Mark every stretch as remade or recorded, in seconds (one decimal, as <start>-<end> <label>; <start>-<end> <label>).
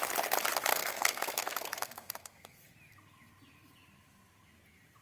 0.0-0.7 recorded; 0.7-2.7 remade; 2.7-5.0 recorded